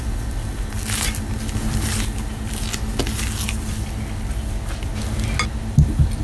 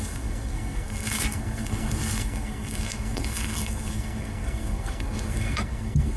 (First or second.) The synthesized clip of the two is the second